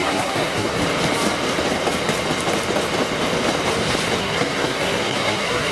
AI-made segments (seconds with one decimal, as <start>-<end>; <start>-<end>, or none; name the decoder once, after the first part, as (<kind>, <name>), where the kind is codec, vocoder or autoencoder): 0.0-0.8 (codec, SNAC); 4.2-5.7

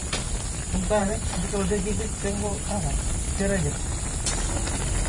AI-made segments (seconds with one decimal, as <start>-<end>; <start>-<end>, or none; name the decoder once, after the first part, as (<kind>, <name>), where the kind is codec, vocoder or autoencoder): 1.0-1.5 (vocoder, BigVGAN v2)

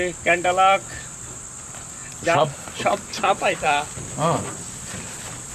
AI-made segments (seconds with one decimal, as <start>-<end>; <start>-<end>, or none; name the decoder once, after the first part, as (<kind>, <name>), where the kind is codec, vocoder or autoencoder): 2.0-5.5 (vocoder, BigVGAN v2)

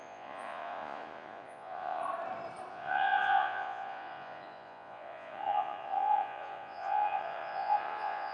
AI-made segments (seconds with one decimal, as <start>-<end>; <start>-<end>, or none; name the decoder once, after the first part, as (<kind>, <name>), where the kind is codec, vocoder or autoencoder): 0.0-2.0 (vocoder, Vocos); 2.7-8.3